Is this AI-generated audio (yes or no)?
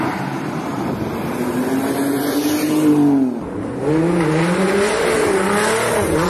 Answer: no